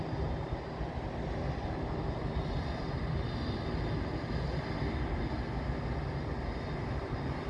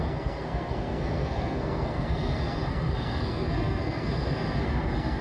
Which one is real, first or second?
first